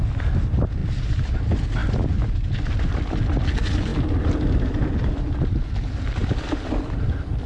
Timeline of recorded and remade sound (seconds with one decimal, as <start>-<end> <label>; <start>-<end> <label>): 0.0-0.8 recorded; 0.8-1.4 remade; 1.4-1.8 recorded; 1.8-2.8 remade; 2.8-3.9 recorded; 3.9-4.5 remade; 4.5-6.2 recorded; 6.2-7.1 remade; 7.1-7.5 recorded